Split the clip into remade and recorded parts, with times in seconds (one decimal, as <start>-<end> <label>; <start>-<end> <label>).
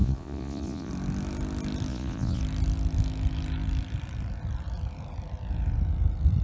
0.0-0.9 remade; 0.9-1.9 recorded; 1.9-2.4 remade; 2.4-6.4 recorded